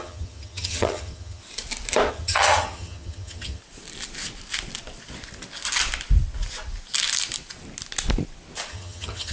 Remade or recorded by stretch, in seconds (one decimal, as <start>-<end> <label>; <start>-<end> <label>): 0.0-1.4 remade; 1.4-2.1 recorded; 2.1-3.6 remade; 3.6-8.7 recorded; 8.7-9.3 remade